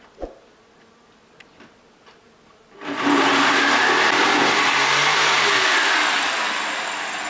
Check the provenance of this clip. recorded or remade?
recorded